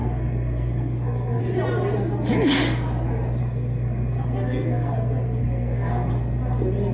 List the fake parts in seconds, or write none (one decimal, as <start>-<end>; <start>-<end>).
0.0-1.4; 3.4-6.1